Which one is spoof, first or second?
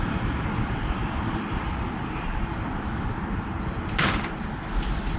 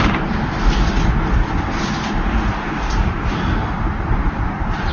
first